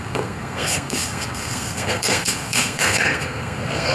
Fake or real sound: fake